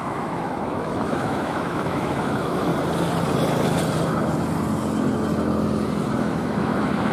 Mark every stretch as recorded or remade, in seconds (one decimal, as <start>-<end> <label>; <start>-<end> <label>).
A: 0.0-2.7 remade; 2.7-6.2 recorded; 6.2-7.1 remade